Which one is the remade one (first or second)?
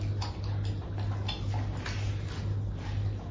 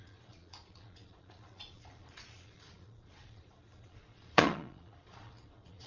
second